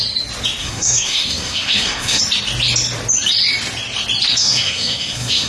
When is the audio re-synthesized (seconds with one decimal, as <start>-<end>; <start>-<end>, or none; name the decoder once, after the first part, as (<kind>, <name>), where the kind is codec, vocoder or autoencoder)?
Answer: 0.6-2.2 (codec, SNAC); 4.4-5.5